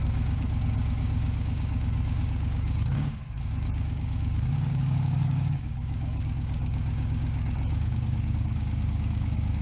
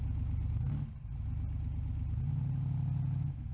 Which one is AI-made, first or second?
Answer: first